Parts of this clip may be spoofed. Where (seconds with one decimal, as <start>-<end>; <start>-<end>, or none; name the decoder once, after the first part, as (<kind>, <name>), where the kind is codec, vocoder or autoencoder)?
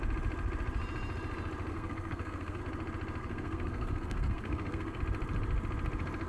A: 1.7-2.6 (codec, SNAC); 3.2-5.0